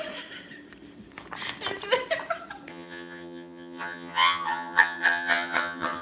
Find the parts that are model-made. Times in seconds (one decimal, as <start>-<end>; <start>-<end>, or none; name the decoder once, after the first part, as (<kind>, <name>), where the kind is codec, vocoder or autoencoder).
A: 2.7-6.0 (vocoder, HiFi-GAN)

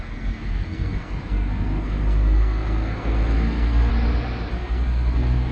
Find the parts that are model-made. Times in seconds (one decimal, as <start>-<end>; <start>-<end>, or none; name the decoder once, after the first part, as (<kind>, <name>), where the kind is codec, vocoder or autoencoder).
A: 0.0-3.9 (codec, SNAC); 4.5-5.5

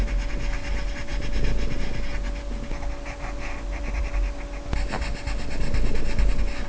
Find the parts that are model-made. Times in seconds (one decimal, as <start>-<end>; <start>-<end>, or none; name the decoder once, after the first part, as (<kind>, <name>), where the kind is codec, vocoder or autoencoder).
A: none

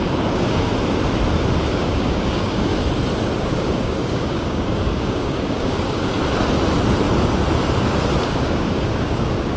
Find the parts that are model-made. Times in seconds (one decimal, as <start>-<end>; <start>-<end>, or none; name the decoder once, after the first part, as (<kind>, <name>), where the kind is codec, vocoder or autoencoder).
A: 0.0-0.7 (codec, DAC); 1.7-2.7; 3.4-6.1; 8.3-9.6

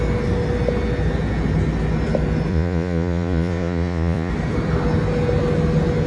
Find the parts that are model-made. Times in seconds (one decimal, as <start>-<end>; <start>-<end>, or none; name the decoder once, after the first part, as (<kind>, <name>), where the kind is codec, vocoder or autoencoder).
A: 2.5-4.3 (vocoder, Vocos)

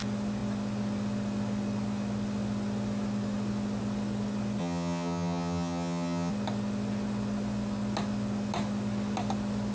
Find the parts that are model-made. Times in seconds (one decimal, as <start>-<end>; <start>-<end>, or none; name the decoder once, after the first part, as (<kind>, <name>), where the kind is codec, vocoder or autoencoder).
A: 4.6-6.3 (vocoder, HiFi-GAN)

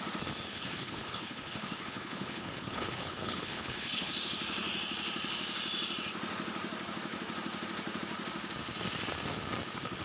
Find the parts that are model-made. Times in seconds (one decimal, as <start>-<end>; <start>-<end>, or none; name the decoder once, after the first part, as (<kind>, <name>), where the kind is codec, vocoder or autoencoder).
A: 0.5-4.1 (codec, HILCodec)

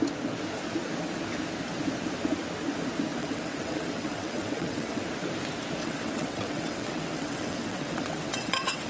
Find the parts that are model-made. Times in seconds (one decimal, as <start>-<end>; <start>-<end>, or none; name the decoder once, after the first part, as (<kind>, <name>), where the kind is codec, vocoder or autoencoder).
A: 3.2-5.0 (vocoder, WaveNeXt); 5.8-8.9